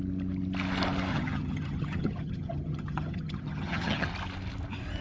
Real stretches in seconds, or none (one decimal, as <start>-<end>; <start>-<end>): 0.0-1.1; 4.1-5.0